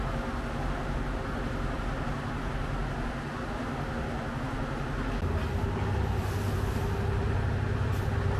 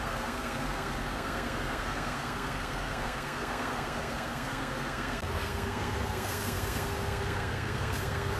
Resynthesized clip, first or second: second